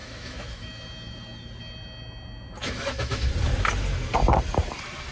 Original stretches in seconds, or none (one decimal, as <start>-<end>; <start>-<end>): 0.7-2.6; 3.3-5.1